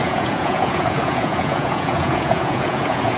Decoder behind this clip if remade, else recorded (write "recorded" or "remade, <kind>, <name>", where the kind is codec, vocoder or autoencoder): remade, vocoder, Vocos